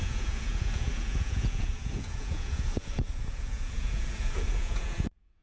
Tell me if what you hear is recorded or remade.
remade